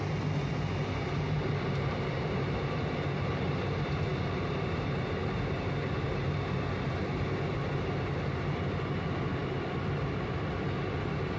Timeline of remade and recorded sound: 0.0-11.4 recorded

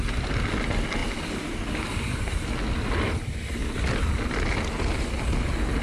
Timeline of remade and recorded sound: 0.0-5.8 recorded

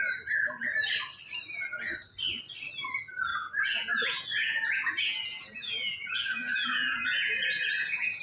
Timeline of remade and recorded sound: 0.0-3.3 recorded; 3.3-8.2 remade